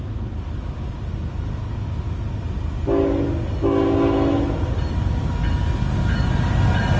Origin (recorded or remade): recorded